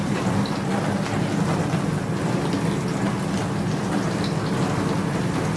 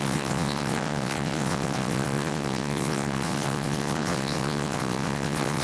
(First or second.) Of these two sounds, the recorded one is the first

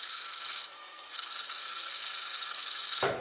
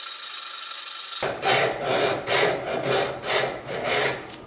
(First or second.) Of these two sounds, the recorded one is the second